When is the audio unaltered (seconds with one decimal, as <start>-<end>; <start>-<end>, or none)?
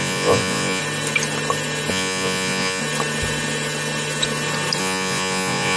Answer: 0.8-1.9; 2.8-4.8